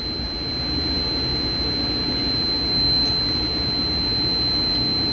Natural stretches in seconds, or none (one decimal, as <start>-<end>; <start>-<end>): 0.0-5.1